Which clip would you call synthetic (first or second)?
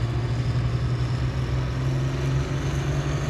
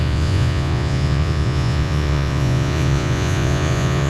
second